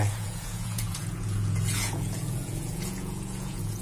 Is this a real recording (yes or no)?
no